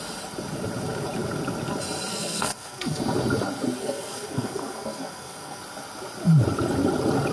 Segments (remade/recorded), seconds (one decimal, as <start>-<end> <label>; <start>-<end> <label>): 0.0-2.1 recorded; 2.1-3.0 remade; 3.0-3.8 recorded; 3.8-5.6 remade; 5.6-7.3 recorded